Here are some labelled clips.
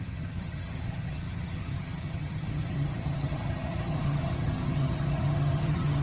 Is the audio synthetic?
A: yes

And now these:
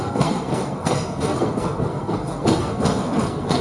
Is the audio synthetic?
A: yes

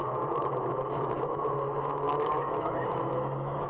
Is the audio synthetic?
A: yes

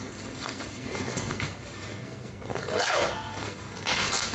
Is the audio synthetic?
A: yes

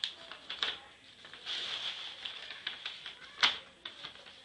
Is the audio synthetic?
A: no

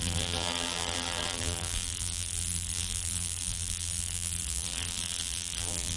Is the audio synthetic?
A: yes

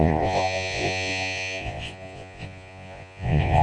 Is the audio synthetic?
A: yes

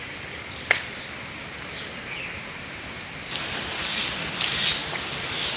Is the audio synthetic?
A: no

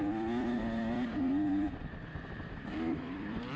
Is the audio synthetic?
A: yes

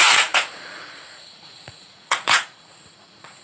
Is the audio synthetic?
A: yes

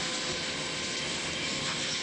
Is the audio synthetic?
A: no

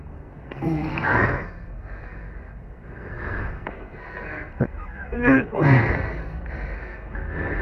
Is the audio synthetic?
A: yes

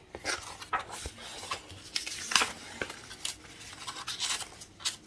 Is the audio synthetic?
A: no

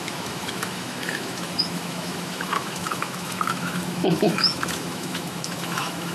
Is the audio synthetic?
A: yes